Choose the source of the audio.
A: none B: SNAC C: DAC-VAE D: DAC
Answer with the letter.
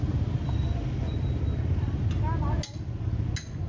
A